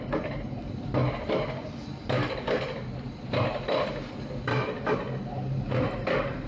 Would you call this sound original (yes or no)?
yes